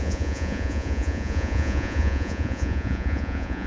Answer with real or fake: fake